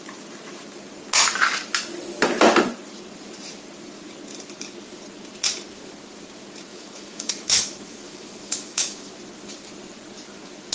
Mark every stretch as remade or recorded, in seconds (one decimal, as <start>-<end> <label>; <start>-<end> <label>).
0.0-6.7 recorded; 6.7-9.1 remade; 9.1-10.7 recorded

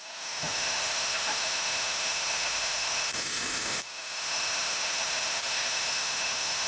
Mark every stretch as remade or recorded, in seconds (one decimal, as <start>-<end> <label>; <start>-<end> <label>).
0.0-6.7 remade

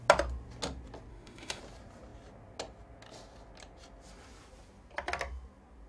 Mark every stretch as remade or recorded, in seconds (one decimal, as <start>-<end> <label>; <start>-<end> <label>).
0.0-1.1 recorded; 1.1-1.6 remade; 1.6-5.9 recorded

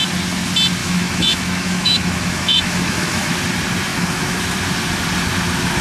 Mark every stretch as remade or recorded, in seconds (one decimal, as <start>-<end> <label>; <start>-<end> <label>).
0.0-0.8 recorded; 0.8-3.3 remade; 3.3-3.9 recorded; 3.9-4.4 remade; 4.4-5.8 recorded

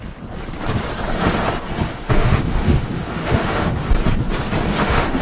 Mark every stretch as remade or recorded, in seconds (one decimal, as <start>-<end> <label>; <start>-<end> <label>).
0.0-1.9 recorded; 1.9-3.9 remade; 3.9-4.7 recorded; 4.7-5.2 remade